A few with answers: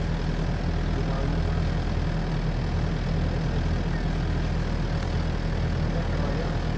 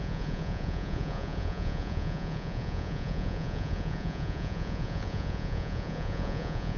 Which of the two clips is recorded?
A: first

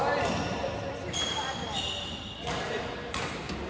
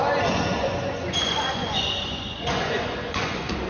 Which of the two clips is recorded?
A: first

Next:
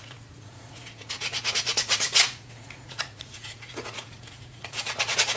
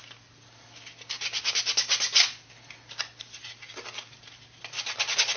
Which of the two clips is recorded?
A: second